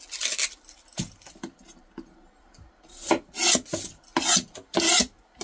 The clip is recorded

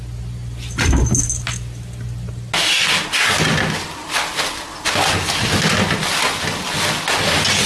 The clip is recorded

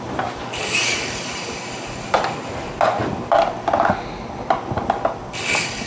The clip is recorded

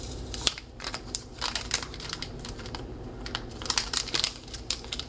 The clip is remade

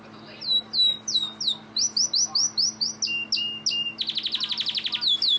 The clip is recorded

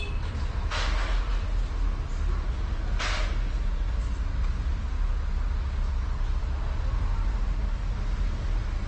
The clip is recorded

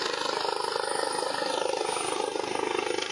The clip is recorded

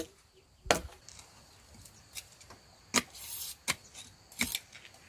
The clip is recorded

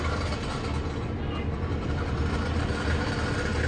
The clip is recorded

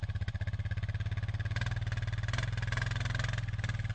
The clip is recorded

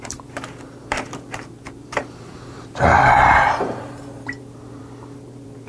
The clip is remade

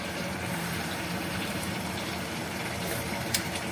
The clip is remade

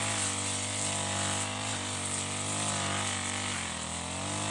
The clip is recorded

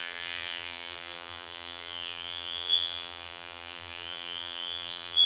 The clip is remade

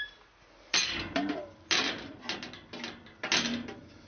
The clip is recorded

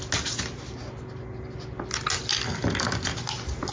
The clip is recorded